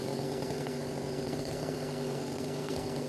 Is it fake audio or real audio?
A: fake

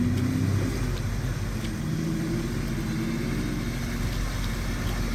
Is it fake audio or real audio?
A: real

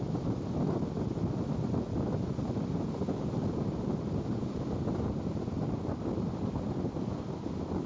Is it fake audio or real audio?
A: real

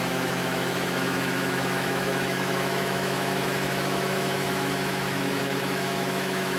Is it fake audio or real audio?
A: fake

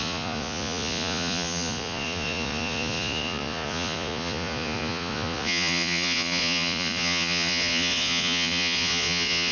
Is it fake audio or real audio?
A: fake